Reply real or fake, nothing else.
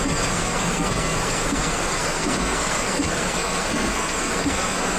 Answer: fake